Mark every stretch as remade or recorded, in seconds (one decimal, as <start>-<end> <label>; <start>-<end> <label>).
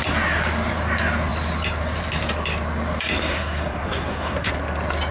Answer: 0.0-3.3 recorded; 3.3-4.5 remade; 4.5-5.1 recorded